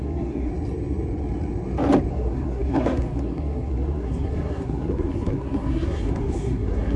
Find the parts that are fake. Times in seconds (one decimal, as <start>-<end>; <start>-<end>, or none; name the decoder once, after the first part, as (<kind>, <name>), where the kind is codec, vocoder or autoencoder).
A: 0.0-0.5 (codec, SNAC); 2.1-7.0